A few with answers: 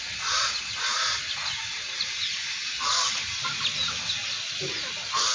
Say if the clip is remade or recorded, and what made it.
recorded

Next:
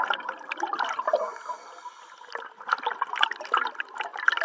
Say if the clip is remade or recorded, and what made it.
recorded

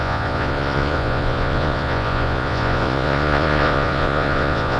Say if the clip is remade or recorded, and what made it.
remade, vocoder, Vocos